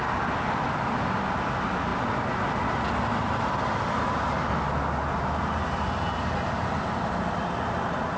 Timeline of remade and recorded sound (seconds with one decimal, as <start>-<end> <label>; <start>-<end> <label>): 0.0-8.2 recorded